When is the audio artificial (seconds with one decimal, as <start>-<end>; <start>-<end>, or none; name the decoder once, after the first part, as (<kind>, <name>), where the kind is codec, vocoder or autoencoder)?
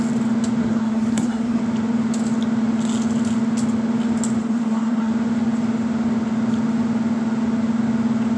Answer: 0.6-1.6 (codec, SNAC); 4.4-5.1